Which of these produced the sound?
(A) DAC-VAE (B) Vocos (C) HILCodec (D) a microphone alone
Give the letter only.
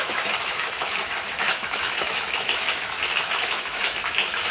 A